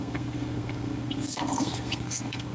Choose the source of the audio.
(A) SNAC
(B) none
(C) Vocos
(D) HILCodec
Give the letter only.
A